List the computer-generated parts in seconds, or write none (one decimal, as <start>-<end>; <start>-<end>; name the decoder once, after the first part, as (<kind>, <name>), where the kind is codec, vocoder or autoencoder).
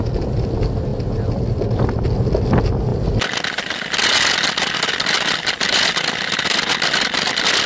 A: none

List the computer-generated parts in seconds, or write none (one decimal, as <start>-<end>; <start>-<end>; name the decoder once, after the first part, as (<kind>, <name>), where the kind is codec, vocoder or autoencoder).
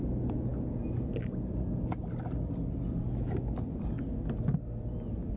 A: none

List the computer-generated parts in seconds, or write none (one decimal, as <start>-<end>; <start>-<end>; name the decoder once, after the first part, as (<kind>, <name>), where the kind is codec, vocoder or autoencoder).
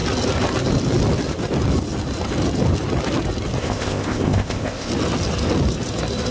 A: 3.6-4.9 (codec, ZipCodec)